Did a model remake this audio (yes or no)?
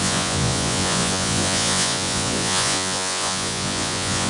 yes